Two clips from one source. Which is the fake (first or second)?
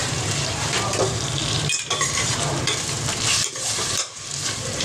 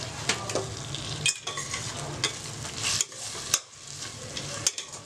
first